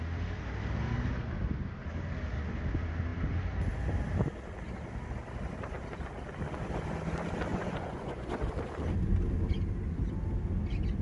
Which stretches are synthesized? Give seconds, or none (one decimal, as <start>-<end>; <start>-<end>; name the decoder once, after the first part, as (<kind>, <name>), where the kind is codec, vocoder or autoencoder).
7.5-8.5 (vocoder, Vocos)